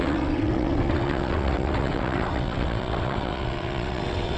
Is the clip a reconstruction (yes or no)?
yes